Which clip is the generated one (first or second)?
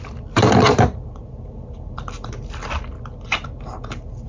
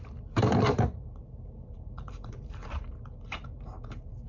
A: second